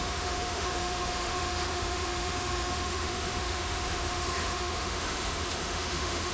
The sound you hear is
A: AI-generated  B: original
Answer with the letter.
A